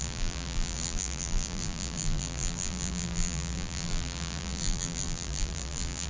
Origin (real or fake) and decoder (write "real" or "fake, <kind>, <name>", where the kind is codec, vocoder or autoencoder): fake, vocoder, BigVGAN v2